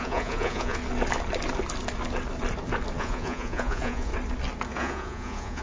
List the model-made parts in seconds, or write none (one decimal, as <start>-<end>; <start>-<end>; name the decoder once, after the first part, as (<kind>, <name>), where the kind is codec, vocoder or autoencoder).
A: 0.0-0.8 (vocoder, Vocos); 3.0-4.1; 4.7-5.6